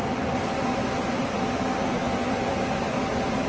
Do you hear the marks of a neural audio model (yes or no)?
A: no